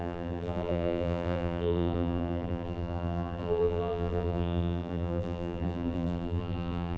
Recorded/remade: remade